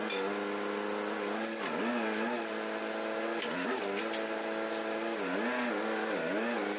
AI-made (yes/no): no